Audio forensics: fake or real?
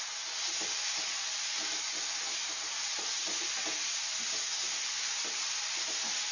real